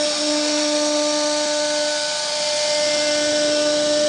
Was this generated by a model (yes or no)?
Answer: no